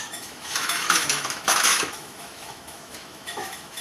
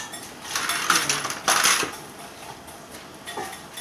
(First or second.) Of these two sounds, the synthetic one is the first